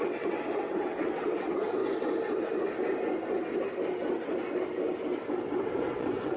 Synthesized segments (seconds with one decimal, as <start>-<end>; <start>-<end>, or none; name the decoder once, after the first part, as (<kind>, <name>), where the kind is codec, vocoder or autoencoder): 0.0-1.8 (vocoder, WaveNeXt); 5.6-6.4